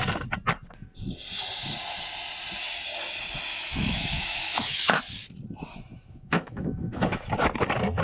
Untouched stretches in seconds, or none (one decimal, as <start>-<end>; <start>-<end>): 0.0-3.5; 5.0-5.7; 7.3-8.0